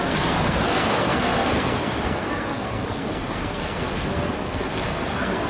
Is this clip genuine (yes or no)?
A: no